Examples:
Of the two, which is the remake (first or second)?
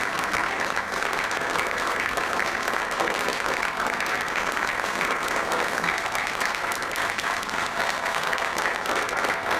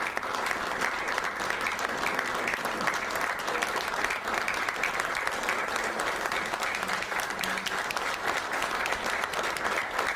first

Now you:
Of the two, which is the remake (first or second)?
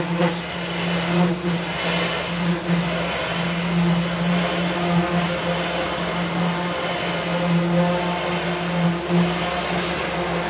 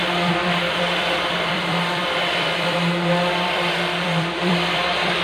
second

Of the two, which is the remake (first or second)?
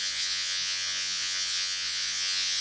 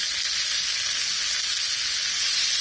first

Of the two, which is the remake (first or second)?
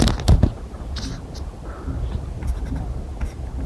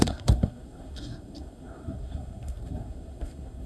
second